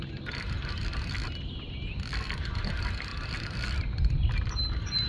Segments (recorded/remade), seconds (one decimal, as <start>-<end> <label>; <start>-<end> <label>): 0.0-5.1 recorded